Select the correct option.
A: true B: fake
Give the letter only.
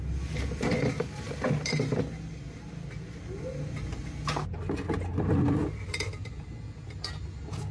A